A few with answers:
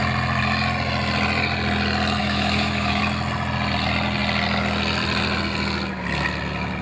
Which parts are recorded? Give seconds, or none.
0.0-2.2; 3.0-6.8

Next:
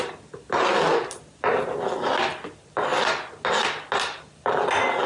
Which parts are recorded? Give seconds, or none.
0.0-5.1

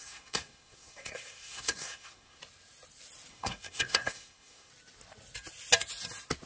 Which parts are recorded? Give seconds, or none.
2.4-3.3; 4.7-6.5

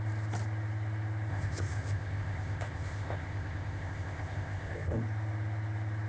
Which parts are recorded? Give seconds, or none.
0.0-1.3; 5.0-6.1